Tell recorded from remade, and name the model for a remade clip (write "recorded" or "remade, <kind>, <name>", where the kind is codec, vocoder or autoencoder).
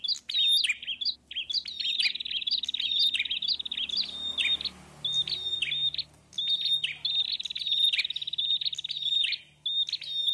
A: recorded